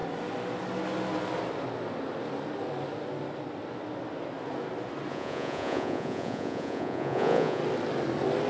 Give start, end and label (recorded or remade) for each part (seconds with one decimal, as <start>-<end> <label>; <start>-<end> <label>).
0.0-5.1 recorded; 5.1-7.6 remade; 7.6-8.5 recorded